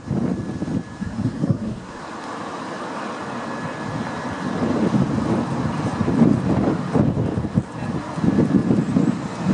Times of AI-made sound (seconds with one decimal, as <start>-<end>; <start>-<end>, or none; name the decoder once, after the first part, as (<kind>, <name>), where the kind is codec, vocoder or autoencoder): 1.0-2.0 (codec, SNAC)